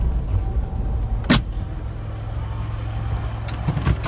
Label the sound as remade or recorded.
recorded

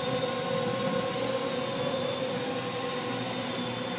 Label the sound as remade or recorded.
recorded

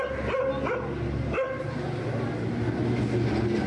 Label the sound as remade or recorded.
recorded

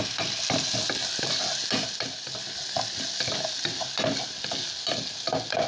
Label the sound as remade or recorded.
recorded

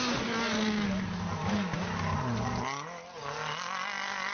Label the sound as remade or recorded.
recorded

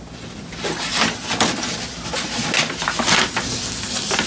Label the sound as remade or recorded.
recorded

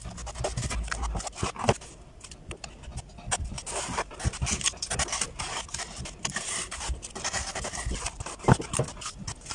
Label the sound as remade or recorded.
recorded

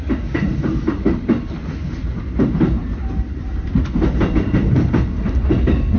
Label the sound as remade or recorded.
recorded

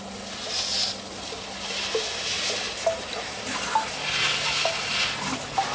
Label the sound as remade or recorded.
recorded